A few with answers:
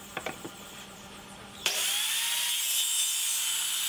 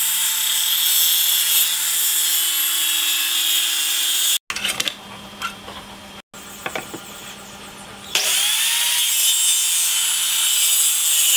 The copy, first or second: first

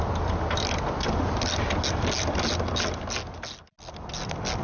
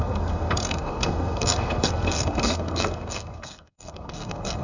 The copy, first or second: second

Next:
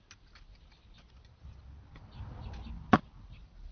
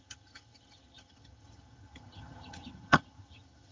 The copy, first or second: second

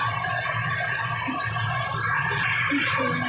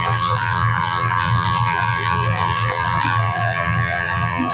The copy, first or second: second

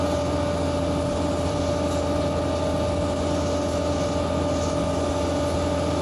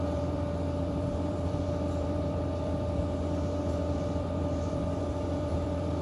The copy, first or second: second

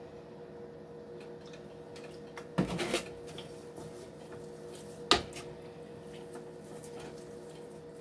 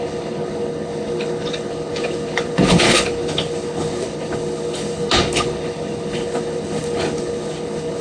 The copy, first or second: second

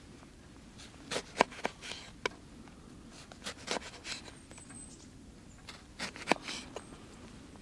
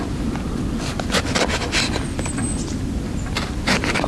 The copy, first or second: second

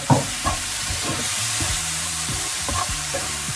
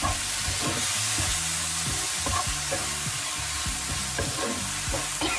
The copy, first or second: first